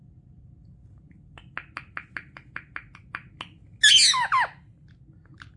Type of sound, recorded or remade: recorded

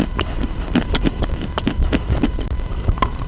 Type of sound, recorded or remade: remade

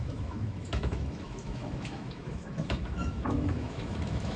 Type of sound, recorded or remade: remade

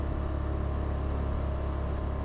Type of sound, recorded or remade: recorded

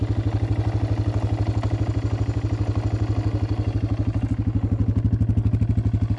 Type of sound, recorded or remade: recorded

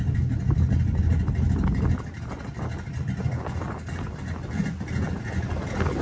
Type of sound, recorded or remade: recorded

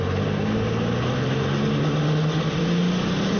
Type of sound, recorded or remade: recorded